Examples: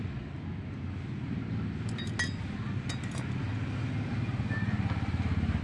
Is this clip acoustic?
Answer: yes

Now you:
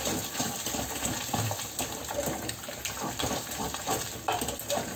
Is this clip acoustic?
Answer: yes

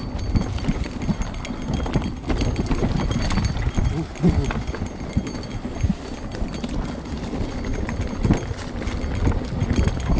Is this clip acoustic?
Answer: yes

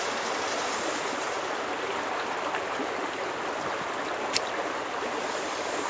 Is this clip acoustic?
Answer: yes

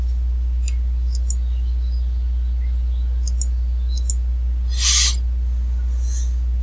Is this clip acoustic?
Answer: yes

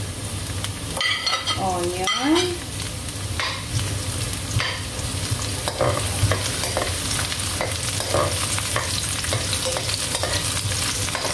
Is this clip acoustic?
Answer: yes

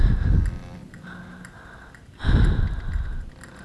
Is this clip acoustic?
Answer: yes